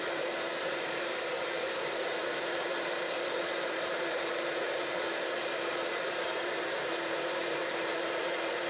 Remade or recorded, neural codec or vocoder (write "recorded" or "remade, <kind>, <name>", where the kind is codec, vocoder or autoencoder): remade, vocoder, BigVGAN v2